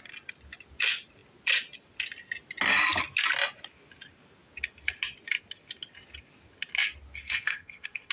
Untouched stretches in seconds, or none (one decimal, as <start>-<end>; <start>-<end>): 0.0-7.2